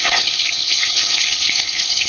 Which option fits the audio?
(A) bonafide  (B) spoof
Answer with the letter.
B